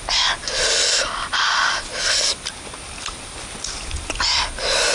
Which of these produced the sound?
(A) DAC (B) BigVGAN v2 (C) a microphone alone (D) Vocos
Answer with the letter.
C